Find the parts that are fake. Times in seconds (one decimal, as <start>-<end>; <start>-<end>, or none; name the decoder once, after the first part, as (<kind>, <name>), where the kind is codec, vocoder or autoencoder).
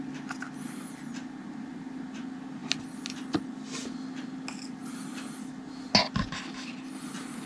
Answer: none